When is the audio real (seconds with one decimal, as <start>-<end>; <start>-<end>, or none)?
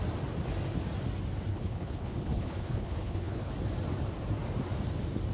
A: 0.0-1.5; 3.5-5.3